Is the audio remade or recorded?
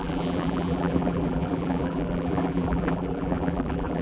remade